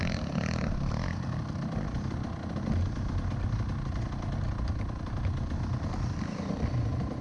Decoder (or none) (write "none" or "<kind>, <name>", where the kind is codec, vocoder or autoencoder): none